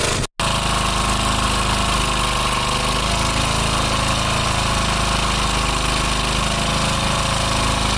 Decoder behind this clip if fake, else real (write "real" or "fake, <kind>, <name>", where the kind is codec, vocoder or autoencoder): real